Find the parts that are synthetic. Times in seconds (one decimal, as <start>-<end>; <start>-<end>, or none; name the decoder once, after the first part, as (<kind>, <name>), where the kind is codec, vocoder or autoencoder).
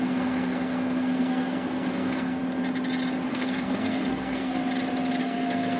0.0-2.4 (codec, SNAC); 3.3-4.6; 5.2-5.8